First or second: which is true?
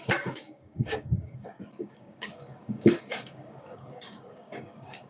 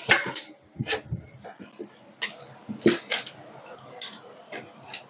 second